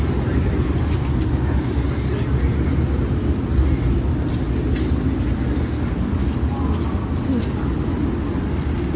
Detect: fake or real real